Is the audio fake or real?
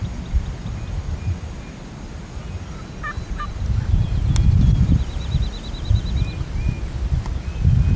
real